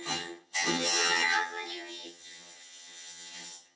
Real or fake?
fake